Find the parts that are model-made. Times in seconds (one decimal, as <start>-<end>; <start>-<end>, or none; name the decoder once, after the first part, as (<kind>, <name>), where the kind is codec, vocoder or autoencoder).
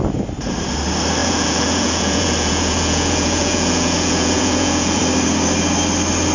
1.2-5.0 (vocoder, Vocos)